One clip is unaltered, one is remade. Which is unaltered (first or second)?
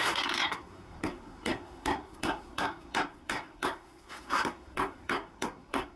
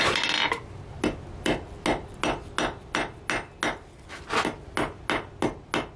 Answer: second